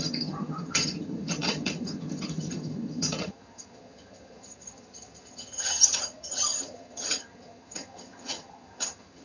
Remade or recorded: remade